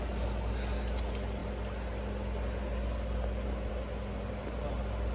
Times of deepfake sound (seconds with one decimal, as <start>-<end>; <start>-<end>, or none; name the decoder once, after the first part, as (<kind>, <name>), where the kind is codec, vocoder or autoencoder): none